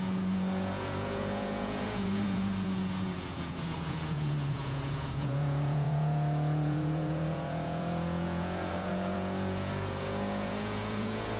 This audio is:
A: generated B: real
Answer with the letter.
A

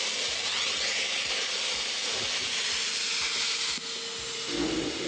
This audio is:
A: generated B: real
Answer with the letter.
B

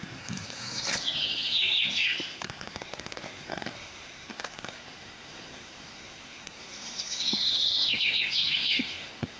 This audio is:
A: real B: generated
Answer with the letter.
B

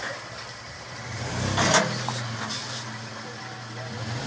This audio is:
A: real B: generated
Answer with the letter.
A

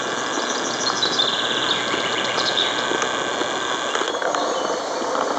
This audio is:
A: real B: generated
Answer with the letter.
A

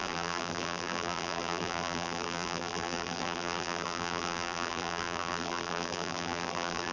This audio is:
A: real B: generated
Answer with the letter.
B